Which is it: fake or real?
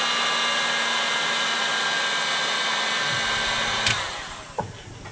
real